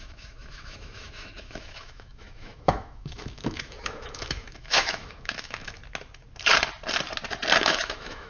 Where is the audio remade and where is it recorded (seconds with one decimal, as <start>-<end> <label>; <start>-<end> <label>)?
0.0-5.8 remade; 5.8-7.6 recorded; 7.6-8.3 remade